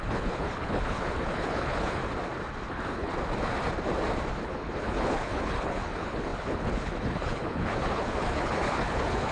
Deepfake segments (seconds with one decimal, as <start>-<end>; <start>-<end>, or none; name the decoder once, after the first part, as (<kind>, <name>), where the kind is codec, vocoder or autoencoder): 0.0-2.0 (codec, HILCodec); 2.7-3.1; 4.4-9.3